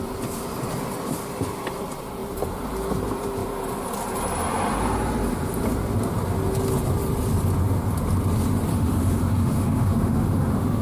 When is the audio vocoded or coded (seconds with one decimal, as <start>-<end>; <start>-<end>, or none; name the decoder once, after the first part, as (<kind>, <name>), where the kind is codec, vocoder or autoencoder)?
8.7-10.8 (autoencoder, DAC-VAE)